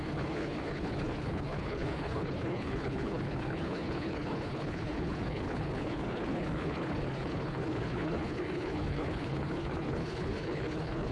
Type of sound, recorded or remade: remade